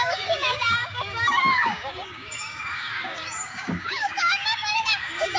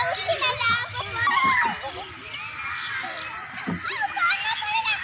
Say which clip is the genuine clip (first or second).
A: second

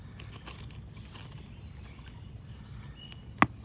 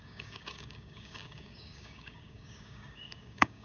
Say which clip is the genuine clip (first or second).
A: first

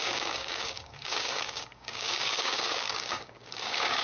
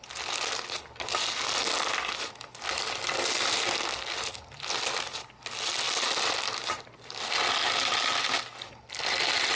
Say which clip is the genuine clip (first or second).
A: second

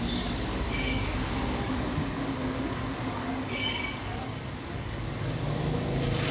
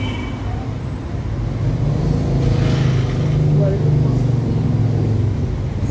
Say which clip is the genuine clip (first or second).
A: second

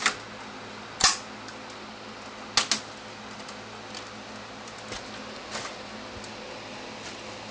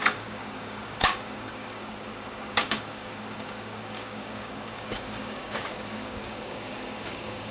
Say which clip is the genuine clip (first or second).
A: first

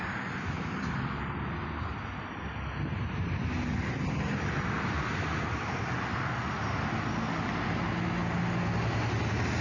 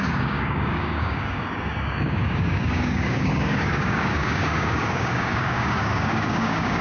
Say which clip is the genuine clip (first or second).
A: first